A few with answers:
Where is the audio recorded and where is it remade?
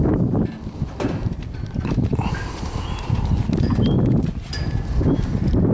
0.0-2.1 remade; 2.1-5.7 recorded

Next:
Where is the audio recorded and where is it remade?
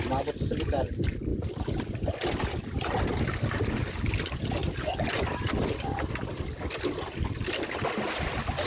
0.0-1.3 recorded; 1.3-3.5 remade; 3.5-4.6 recorded; 4.6-6.2 remade; 6.2-8.7 recorded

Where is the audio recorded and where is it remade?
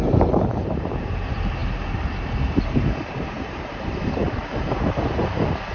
0.0-5.7 remade